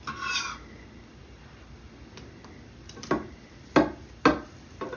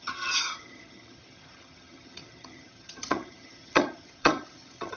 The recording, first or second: first